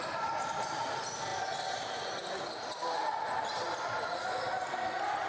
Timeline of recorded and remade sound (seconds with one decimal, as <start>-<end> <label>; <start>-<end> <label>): 0.0-5.3 recorded